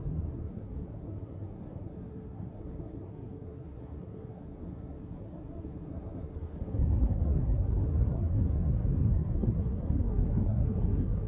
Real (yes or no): no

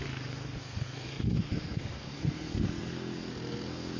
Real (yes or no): no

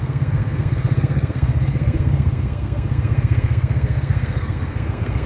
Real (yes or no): no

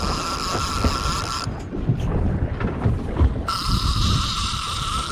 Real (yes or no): yes